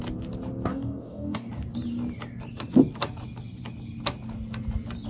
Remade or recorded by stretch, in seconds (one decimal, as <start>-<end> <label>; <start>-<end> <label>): 0.0-0.7 recorded; 0.7-1.5 remade; 1.5-5.1 recorded